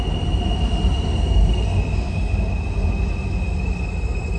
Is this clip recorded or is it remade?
recorded